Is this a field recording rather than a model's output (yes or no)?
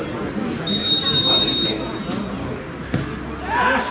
yes